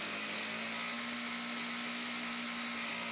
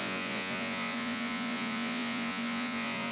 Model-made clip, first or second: second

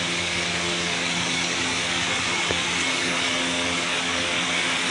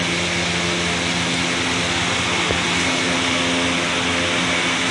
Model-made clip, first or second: first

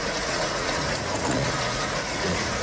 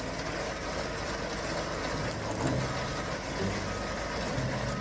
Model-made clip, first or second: first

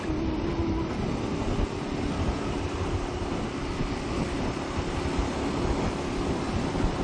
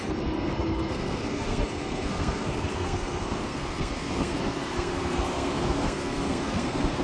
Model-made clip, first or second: second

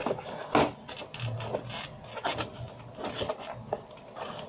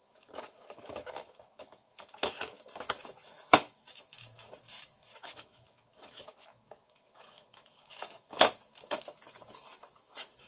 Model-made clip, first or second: second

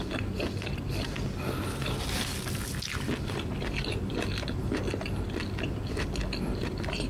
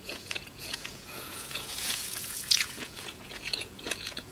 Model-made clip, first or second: second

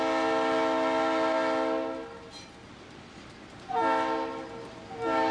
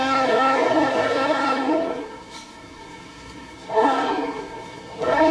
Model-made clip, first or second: second